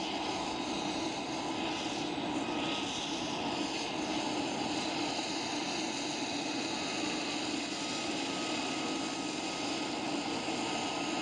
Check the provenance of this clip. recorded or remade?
recorded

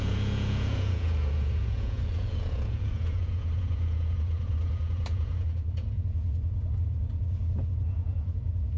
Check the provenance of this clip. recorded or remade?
remade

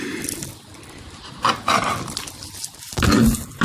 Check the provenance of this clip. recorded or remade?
recorded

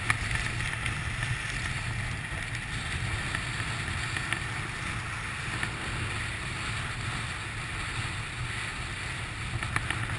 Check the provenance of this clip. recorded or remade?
recorded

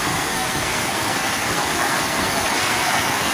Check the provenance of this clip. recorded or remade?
remade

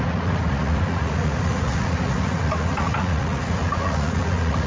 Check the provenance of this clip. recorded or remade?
remade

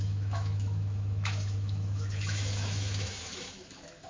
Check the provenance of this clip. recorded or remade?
remade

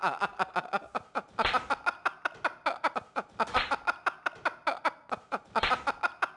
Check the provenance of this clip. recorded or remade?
recorded